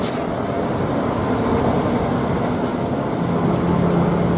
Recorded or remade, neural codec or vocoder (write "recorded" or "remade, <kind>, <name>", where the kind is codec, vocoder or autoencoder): recorded